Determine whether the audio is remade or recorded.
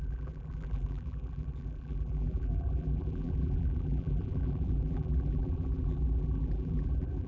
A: remade